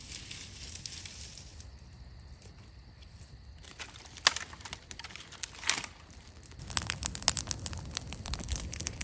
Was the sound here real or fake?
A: real